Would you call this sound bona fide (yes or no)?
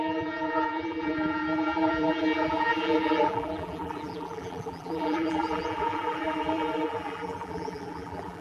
no